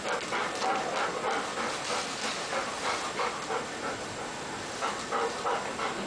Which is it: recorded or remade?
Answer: recorded